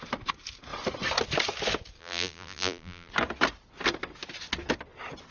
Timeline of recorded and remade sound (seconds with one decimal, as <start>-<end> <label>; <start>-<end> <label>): 0.0-2.0 recorded; 2.0-3.1 remade; 3.1-5.3 recorded